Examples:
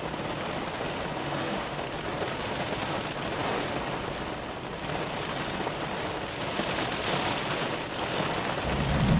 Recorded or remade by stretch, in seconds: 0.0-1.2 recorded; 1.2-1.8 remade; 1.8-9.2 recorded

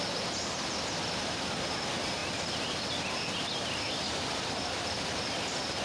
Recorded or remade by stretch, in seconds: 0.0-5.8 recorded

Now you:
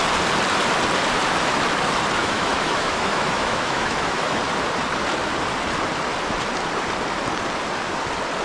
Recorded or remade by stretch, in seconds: 0.0-2.2 recorded; 2.2-4.4 remade; 4.4-8.4 recorded

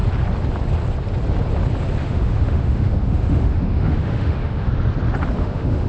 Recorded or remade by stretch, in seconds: 0.0-2.0 recorded; 2.0-4.7 remade; 4.7-5.4 recorded; 5.4-5.9 remade